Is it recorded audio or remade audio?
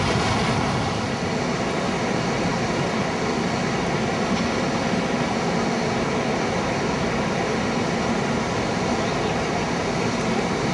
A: recorded